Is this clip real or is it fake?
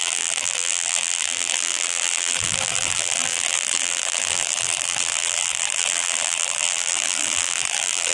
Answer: fake